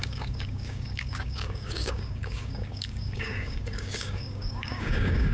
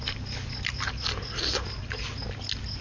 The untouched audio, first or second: second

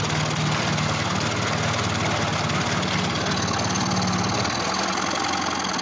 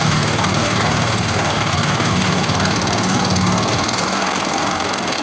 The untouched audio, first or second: first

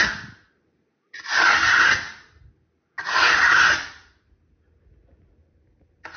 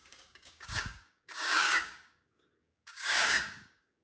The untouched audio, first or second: first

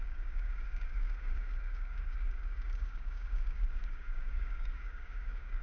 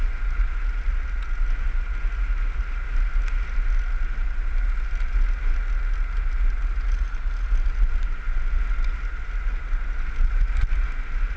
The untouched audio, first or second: second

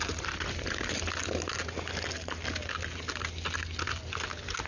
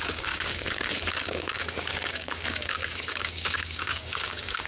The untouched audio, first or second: first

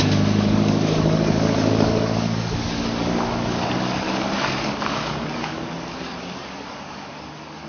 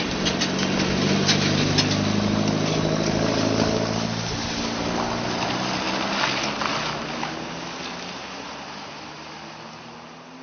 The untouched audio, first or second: second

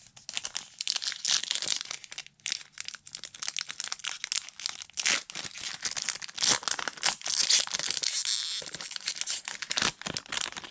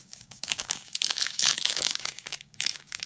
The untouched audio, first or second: first